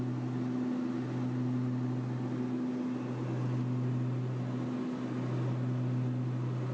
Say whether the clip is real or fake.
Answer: real